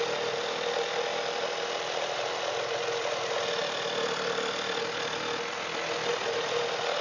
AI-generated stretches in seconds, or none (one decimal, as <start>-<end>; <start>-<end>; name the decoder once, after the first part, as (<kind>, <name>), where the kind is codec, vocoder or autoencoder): none